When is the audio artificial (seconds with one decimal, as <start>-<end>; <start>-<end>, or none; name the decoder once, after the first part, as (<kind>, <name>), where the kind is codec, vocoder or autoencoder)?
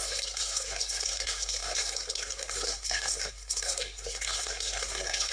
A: 0.0-5.3 (codec, SNAC)